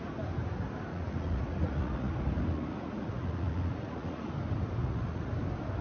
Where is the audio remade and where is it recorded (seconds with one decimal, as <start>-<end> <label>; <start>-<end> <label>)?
0.0-0.9 recorded; 0.9-4.3 remade; 4.3-4.8 recorded; 4.8-5.3 remade; 5.3-5.8 recorded